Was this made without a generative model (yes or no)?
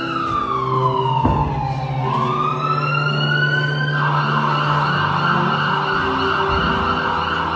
yes